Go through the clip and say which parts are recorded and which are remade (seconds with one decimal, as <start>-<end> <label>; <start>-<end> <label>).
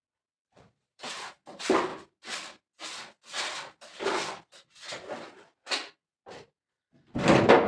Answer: 0.0-0.4 recorded; 0.4-1.3 remade; 1.3-7.7 recorded